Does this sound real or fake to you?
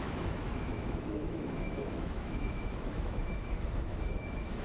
fake